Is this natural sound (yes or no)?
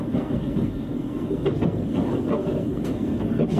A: no